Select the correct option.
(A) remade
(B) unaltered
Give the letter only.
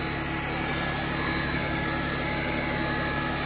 B